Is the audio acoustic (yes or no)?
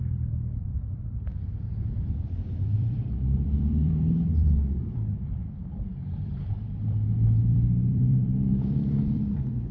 no